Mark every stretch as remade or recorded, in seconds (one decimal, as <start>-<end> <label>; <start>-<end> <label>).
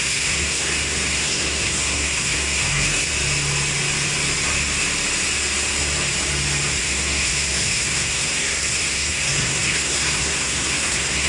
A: 0.0-3.1 remade; 3.1-6.8 recorded; 6.8-11.3 remade